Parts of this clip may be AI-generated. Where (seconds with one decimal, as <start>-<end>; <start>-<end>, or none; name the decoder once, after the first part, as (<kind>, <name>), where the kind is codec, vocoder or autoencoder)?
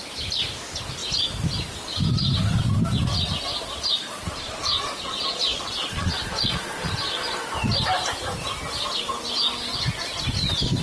4.0-6.9 (vocoder, Vocos)